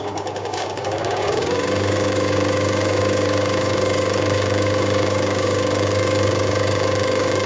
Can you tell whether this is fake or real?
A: fake